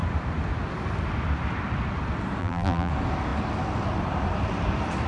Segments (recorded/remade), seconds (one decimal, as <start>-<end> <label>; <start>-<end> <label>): 0.0-2.4 recorded; 2.4-2.9 remade; 2.9-5.1 recorded